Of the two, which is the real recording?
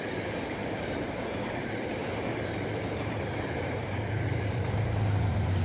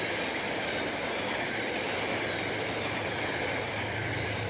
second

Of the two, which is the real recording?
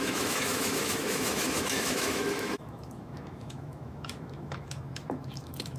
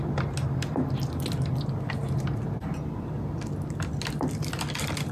second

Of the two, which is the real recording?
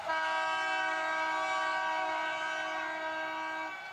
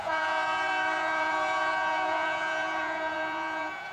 first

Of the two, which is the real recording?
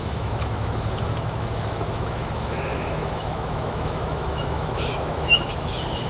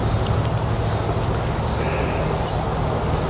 second